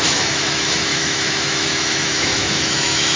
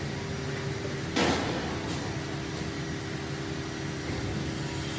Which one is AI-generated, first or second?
first